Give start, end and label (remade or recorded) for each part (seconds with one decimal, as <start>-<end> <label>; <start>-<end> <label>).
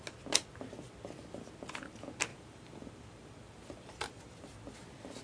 0.0-2.3 recorded; 2.3-4.5 remade; 4.5-5.2 recorded